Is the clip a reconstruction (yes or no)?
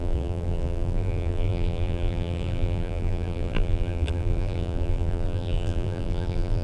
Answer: yes